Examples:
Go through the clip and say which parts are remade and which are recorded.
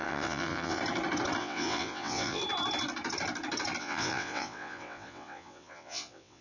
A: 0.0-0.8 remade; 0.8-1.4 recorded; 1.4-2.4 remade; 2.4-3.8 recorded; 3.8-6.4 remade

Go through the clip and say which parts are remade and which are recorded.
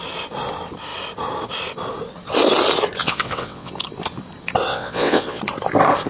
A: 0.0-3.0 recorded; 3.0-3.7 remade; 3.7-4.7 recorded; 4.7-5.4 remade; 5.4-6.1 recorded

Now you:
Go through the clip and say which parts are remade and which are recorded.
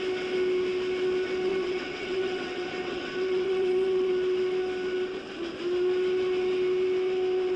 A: 0.0-1.5 recorded; 1.5-4.1 remade; 4.1-7.6 recorded